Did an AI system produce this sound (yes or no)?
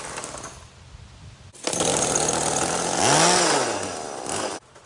no